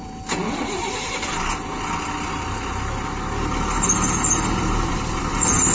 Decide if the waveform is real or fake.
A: real